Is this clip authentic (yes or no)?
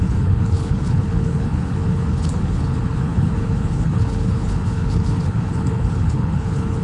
no